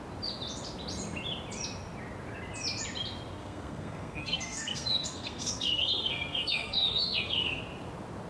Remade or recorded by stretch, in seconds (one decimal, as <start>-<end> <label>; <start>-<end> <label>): 0.0-3.4 recorded; 3.4-7.6 remade; 7.6-8.3 recorded